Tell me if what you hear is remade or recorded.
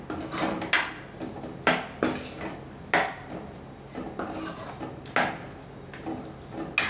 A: recorded